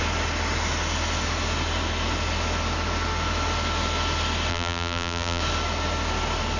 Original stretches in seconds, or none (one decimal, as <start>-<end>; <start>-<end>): 0.0-4.5; 5.4-6.6